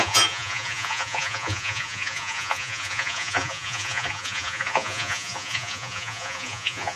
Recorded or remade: remade